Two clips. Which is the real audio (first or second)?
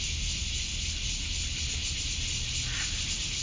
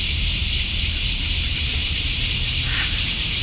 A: first